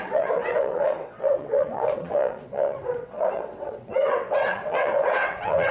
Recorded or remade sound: remade